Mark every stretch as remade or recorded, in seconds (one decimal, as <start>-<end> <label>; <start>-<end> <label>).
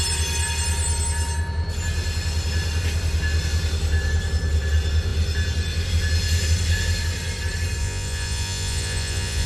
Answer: 0.0-7.8 recorded; 7.8-9.5 remade